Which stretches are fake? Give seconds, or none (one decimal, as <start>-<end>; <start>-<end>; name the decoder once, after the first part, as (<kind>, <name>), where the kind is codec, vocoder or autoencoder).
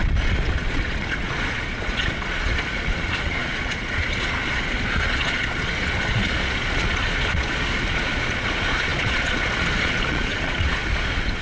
0.0-11.4 (vocoder, Vocos)